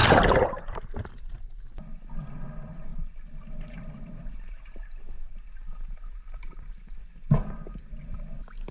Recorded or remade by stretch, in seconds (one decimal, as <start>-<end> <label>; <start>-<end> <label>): 0.0-0.7 remade; 0.7-2.9 recorded; 2.9-4.8 remade; 4.8-8.7 recorded